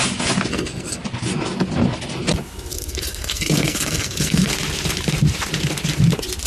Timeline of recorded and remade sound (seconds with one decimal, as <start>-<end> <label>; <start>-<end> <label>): 0.0-0.5 recorded; 0.5-1.0 remade; 1.0-2.7 recorded; 2.7-4.5 remade; 4.5-6.5 recorded